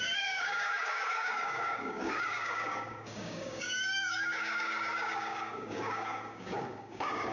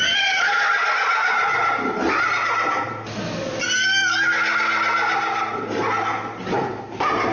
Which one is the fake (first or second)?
first